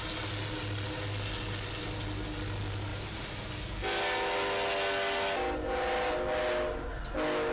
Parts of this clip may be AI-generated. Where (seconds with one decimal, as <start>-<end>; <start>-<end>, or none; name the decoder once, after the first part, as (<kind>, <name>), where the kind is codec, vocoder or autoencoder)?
none